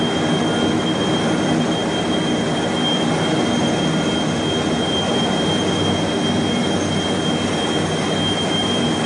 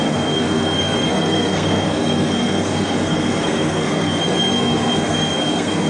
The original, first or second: first